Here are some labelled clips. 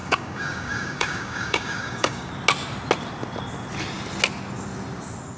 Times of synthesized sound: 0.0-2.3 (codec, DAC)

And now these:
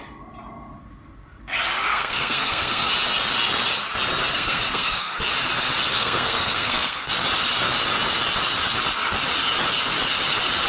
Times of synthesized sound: 1.9-2.9 (codec, SNAC); 4.3-5.2; 5.9-7.1

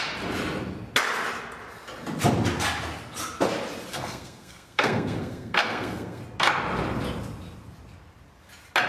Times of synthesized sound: 3.9-6.2 (codec, SNAC)

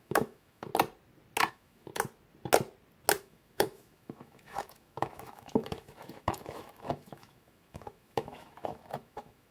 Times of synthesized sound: 0.0-0.7 (autoencoder, DAC-VAE); 1.5-1.9; 3.2-9.5

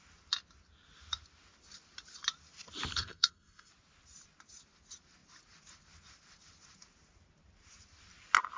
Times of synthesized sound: 2.9-3.7 (codec, SNAC)

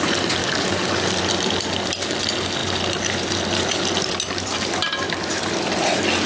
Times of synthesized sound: 0.4-0.9 (codec, DAC)

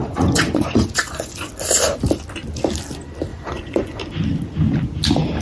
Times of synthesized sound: 0.0-1.5 (vocoder, Vocos); 3.3-4.0

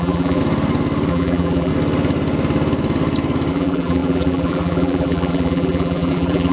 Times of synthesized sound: 0.0-0.4 (vocoder, BigVGAN v2); 1.1-1.7; 3.5-6.5